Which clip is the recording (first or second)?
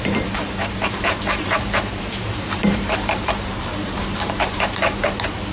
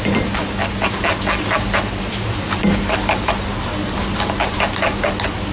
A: second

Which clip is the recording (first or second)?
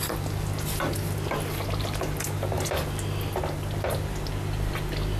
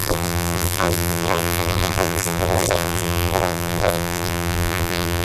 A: first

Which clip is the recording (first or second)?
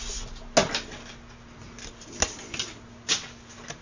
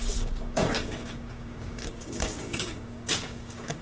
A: first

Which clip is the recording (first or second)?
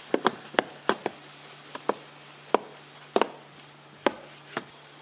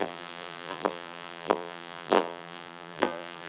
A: first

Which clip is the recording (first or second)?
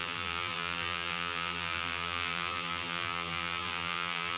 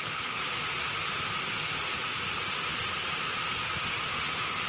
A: second